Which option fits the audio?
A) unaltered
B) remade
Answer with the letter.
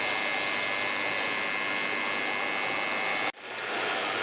A